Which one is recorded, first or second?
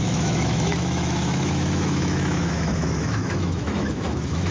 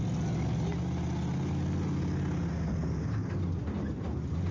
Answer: second